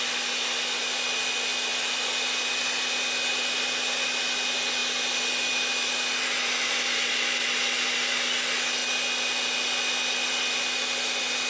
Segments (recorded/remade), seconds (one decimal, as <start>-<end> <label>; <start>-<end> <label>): 0.0-11.5 recorded